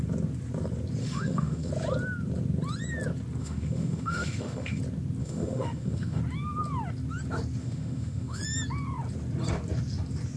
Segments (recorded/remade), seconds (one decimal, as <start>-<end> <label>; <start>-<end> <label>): 0.0-1.0 recorded; 1.0-1.7 remade; 1.7-3.4 recorded; 3.4-4.8 remade; 4.8-5.2 recorded; 5.2-6.2 remade; 6.2-7.6 recorded; 7.6-8.4 remade; 8.4-10.4 recorded